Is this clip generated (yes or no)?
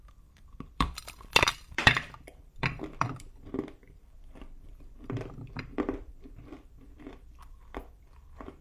yes